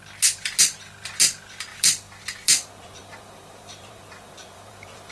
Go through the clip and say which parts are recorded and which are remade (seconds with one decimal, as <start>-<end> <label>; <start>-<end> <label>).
0.0-1.7 recorded; 1.7-5.1 remade